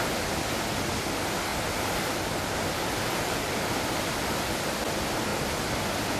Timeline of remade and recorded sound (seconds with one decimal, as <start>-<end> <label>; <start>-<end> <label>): 0.0-1.5 recorded; 1.5-4.4 remade; 4.4-5.3 recorded; 5.3-6.2 remade